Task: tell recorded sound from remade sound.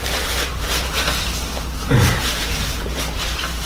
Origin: remade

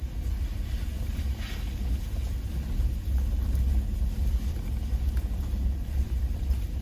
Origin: recorded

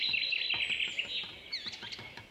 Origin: recorded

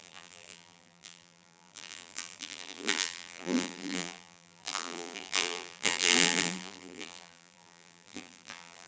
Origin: remade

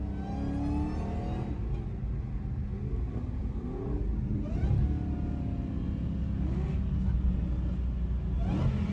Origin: recorded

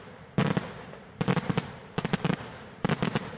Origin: remade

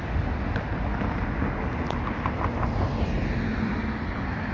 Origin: recorded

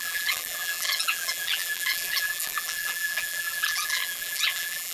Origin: remade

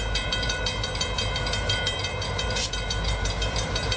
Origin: remade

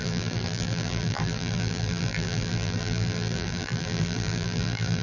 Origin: remade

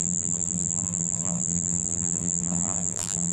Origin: remade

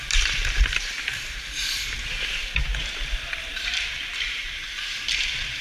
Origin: remade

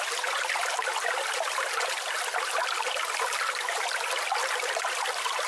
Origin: recorded